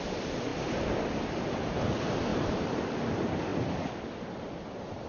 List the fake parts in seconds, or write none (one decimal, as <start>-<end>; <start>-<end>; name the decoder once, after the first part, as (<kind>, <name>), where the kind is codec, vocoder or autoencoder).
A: 2.3-2.9 (vocoder, BigVGAN v2); 3.5-4.6